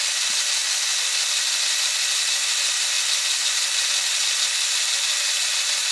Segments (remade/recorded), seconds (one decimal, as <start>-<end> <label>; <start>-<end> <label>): 0.0-5.9 recorded